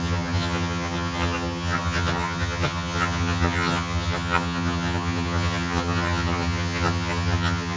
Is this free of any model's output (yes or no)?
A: no